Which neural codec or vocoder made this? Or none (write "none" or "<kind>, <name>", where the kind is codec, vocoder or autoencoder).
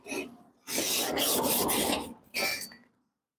none